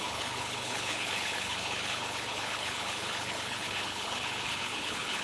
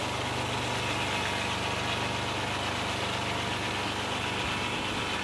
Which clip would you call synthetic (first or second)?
first